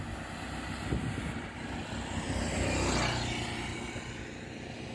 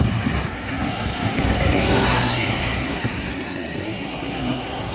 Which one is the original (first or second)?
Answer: first